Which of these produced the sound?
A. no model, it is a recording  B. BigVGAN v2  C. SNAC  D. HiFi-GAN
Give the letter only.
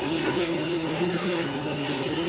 C